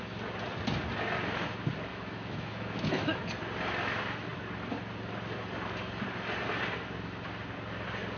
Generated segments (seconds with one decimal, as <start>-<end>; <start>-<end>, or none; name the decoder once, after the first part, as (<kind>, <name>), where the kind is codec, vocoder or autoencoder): 1.9-3.2 (autoencoder, DAC-VAE)